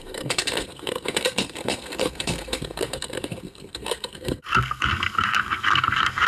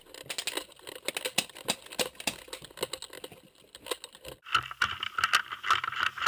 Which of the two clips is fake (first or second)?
first